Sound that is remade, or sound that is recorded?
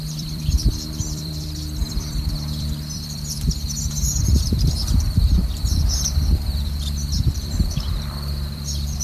remade